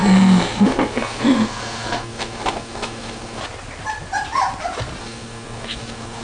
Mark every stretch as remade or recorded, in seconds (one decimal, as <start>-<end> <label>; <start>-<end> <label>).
0.0-3.4 remade; 3.4-5.0 recorded; 5.0-6.2 remade